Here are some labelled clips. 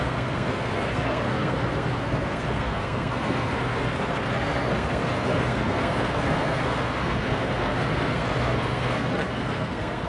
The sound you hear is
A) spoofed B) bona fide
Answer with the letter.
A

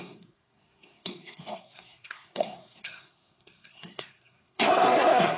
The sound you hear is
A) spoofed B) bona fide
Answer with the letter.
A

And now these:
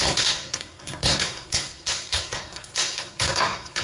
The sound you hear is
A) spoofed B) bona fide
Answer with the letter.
A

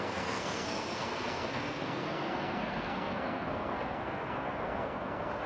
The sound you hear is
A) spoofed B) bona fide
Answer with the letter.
A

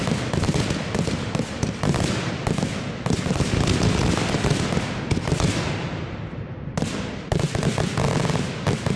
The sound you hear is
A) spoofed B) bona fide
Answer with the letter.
B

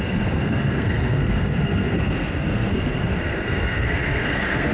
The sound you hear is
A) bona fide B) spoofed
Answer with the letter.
B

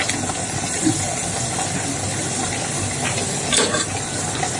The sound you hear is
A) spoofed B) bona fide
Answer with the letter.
B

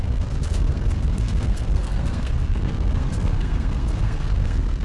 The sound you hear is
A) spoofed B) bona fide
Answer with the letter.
A